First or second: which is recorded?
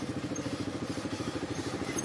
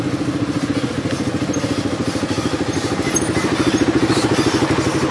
second